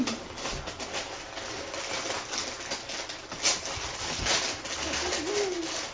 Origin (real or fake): real